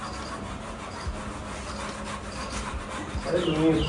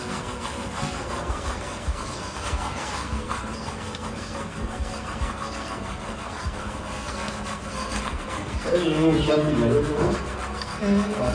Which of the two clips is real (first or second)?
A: first